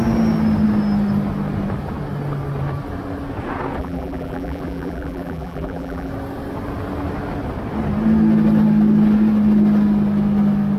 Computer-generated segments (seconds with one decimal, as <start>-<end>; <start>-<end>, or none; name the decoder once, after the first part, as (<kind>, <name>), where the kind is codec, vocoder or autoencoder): 3.8-6.1 (vocoder, BigVGAN v2)